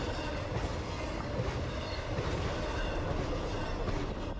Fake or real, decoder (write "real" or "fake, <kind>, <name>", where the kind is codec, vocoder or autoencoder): real